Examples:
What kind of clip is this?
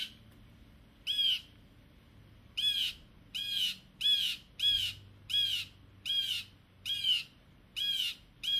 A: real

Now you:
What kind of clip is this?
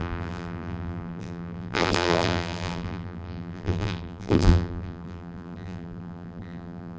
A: fake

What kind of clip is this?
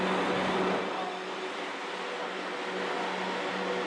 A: real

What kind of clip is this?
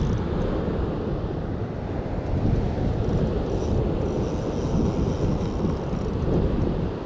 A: real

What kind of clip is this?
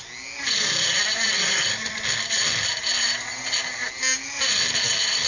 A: real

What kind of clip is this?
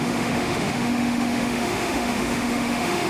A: fake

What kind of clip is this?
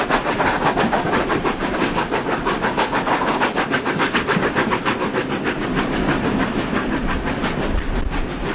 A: real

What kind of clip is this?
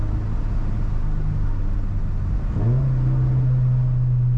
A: real